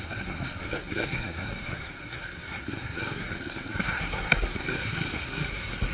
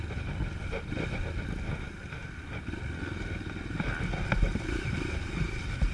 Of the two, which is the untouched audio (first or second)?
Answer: second